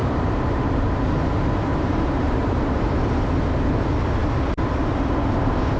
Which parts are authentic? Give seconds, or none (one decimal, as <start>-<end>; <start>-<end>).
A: 0.6-1.7; 3.0-5.8